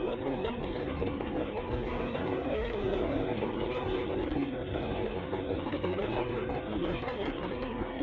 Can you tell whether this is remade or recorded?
remade